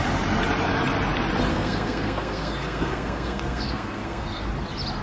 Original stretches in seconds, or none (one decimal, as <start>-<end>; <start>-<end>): 0.0-1.5; 4.5-5.0